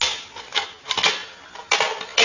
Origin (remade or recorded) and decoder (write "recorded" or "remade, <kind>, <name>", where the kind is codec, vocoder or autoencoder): recorded